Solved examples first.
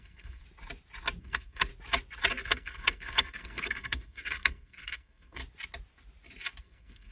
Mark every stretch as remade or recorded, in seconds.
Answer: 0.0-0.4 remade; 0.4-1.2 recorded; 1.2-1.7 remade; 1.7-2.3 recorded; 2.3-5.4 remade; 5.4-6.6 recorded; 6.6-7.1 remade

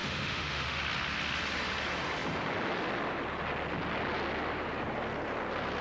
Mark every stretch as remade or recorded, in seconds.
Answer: 0.0-0.8 remade; 0.8-5.8 recorded

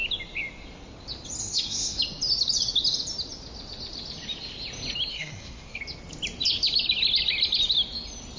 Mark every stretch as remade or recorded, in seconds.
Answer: 0.0-1.4 recorded; 1.4-2.0 remade; 2.0-5.1 recorded; 5.1-5.8 remade; 5.8-8.4 recorded

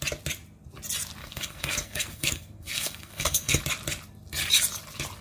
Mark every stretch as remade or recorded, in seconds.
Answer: 0.0-1.2 recorded; 1.2-3.6 remade; 3.6-5.2 recorded

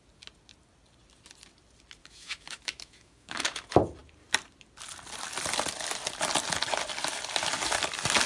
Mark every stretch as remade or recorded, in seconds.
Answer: 0.0-2.0 recorded; 2.0-3.6 remade; 3.6-8.3 recorded

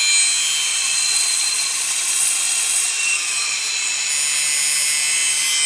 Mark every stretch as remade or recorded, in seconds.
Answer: 0.0-0.7 recorded; 0.7-4.1 remade; 4.1-5.7 recorded

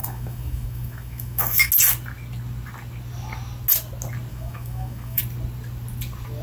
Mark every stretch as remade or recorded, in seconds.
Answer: 0.0-1.7 remade; 1.7-4.3 recorded; 4.3-5.2 remade; 5.2-6.4 recorded

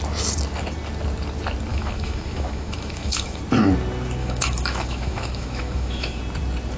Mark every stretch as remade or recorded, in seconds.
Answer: 0.0-1.7 recorded; 1.7-3.4 remade; 3.4-4.2 recorded; 4.2-6.2 remade; 6.2-6.8 recorded